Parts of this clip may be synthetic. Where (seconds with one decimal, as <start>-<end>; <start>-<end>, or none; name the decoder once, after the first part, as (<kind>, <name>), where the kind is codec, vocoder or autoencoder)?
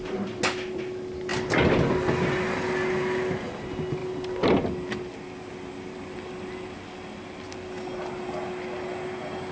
none